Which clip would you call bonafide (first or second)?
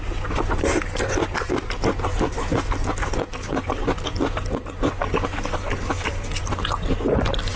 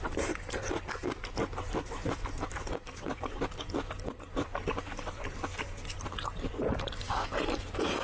first